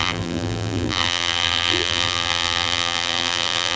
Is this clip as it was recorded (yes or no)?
no